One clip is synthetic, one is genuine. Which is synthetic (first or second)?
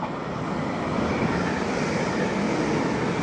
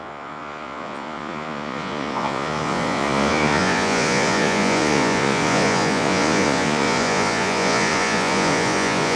second